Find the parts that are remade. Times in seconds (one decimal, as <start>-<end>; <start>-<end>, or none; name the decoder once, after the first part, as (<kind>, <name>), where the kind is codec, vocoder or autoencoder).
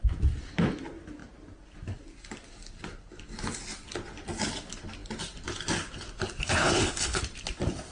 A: 6.4-7.2 (codec, HILCodec)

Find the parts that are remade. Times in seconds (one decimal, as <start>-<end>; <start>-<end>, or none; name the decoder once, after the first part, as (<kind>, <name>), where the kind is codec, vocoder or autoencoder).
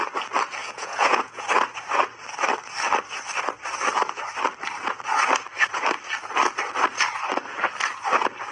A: 0.6-1.5 (vocoder, Vocos)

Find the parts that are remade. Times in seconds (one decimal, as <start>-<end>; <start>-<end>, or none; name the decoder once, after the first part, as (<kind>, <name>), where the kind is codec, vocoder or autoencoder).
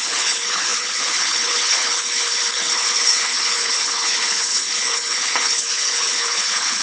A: 0.0-6.8 (codec, HILCodec)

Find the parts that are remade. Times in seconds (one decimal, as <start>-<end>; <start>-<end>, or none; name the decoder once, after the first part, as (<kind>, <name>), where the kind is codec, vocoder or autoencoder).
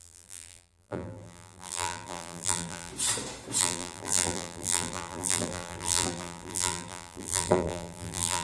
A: 0.0-2.9 (vocoder, BigVGAN v2); 3.6-8.4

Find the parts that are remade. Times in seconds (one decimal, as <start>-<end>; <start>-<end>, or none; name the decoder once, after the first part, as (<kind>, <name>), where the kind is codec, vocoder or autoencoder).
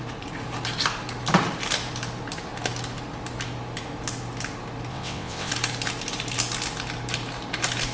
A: 4.9-5.5 (vocoder, WaveNeXt)